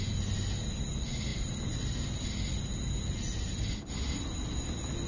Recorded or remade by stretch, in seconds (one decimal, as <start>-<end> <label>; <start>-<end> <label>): 0.0-5.1 recorded